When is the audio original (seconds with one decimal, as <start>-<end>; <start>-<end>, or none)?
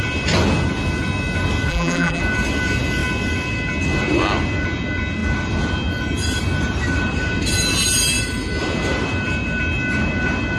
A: 0.0-1.7; 2.2-10.6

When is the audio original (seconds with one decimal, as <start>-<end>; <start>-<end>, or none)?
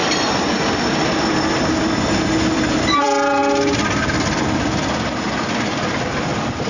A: 3.4-5.3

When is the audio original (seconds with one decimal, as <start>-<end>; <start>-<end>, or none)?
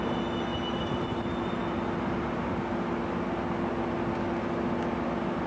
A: 0.0-0.5; 1.0-5.5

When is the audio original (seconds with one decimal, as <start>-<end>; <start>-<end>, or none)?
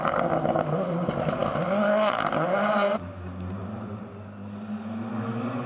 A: 0.0-5.7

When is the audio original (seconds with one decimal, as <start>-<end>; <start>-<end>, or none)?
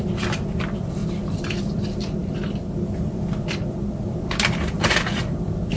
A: 1.0-1.6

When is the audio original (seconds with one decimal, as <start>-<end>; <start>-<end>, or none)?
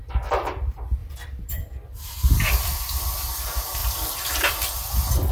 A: 0.0-1.0; 2.3-3.8; 4.5-5.3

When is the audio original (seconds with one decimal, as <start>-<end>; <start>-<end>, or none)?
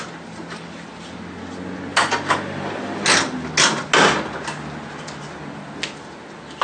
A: 0.0-6.6